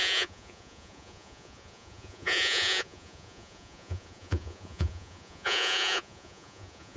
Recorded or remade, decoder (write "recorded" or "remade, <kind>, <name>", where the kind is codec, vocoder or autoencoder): remade, vocoder, Vocos